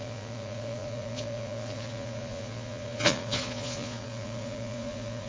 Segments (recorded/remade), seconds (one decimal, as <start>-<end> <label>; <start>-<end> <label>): 0.0-5.3 remade